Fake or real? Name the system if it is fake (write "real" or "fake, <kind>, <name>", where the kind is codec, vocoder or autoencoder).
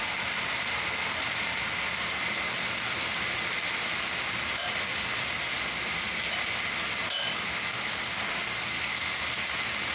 real